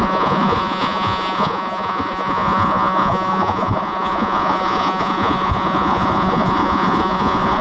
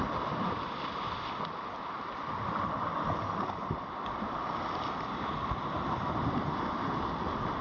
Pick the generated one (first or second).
first